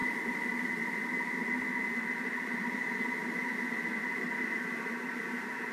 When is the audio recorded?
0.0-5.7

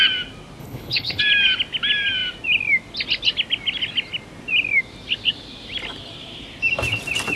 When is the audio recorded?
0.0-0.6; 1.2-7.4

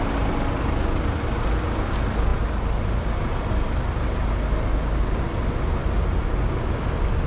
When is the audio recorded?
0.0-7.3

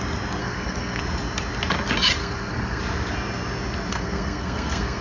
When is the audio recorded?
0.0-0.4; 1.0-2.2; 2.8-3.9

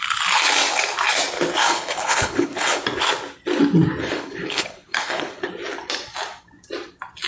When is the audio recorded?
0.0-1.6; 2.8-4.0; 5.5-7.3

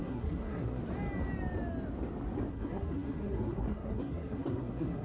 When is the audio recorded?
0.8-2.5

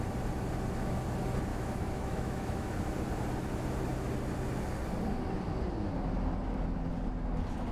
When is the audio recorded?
0.0-1.5; 2.7-7.7

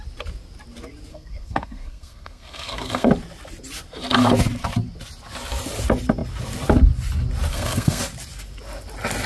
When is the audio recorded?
0.0-1.1; 3.1-7.5; 8.0-9.3